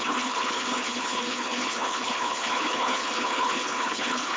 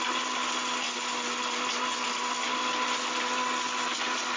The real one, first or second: second